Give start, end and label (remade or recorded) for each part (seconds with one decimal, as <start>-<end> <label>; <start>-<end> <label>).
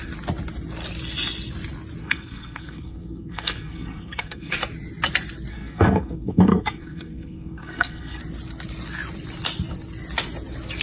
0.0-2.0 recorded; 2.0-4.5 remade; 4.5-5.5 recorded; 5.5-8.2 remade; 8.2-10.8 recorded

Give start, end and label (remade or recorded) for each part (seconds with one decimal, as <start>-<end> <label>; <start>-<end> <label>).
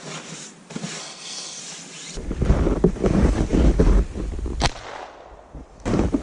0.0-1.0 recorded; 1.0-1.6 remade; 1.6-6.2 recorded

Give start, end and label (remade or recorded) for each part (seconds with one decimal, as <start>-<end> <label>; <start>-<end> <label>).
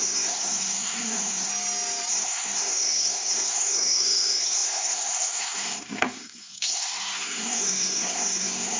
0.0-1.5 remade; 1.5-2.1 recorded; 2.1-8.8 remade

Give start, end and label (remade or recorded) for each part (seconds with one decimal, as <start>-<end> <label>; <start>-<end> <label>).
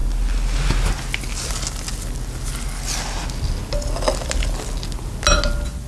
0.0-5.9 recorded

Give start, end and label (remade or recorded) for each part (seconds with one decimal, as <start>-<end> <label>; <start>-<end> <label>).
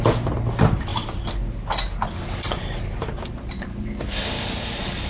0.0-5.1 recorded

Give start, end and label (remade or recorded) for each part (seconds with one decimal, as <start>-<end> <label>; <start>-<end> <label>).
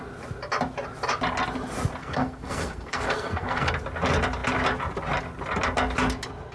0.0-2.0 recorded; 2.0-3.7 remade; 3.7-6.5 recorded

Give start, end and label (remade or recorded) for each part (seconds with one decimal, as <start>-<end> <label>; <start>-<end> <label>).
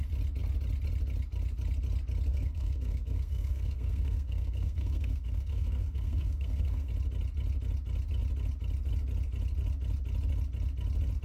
0.0-2.3 recorded; 2.3-6.9 remade; 6.9-11.2 recorded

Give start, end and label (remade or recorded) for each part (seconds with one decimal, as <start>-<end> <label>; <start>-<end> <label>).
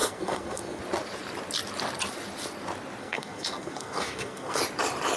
0.0-0.8 remade; 0.8-3.0 recorded; 3.0-4.6 remade; 4.6-5.2 recorded